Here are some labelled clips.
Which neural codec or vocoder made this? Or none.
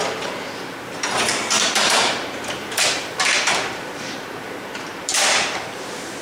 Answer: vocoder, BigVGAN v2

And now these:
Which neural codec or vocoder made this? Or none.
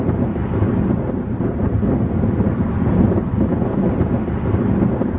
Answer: vocoder, BigVGAN v2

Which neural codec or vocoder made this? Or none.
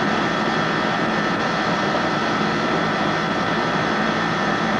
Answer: vocoder, BigVGAN v2